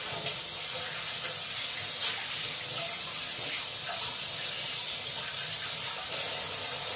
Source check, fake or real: real